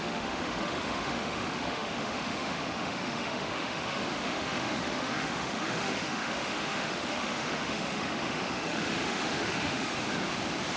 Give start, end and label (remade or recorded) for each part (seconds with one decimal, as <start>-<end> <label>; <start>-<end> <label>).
0.0-9.9 remade; 9.9-10.8 recorded